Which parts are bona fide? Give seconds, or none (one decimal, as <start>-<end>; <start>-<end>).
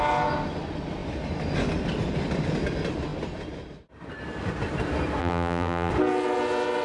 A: 0.0-5.2; 5.9-6.8